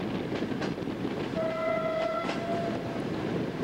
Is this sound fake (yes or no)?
no